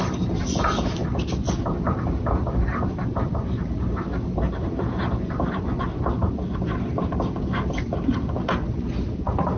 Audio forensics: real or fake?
real